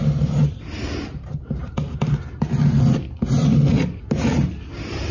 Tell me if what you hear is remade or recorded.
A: recorded